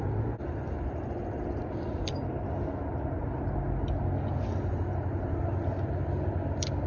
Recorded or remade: recorded